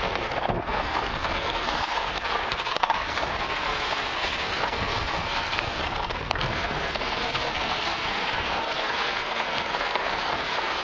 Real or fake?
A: fake